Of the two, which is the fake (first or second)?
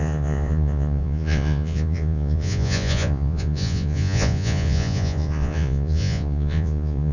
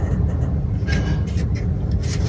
first